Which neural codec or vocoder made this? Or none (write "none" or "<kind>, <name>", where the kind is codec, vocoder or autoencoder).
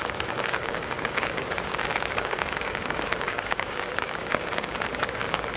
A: codec, DAC